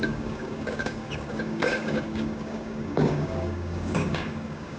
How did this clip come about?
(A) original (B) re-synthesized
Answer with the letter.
B